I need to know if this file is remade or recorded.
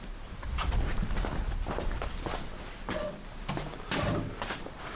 recorded